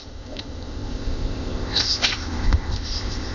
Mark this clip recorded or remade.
remade